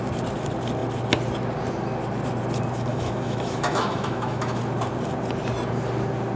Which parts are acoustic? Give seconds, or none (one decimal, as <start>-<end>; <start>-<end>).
0.0-2.9; 4.6-6.4